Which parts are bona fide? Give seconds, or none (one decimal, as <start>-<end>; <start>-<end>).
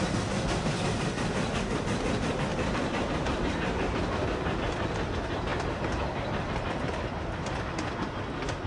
0.0-2.5; 4.1-8.7